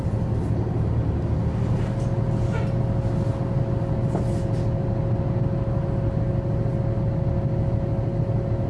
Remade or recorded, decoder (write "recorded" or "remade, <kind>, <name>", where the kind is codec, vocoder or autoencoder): recorded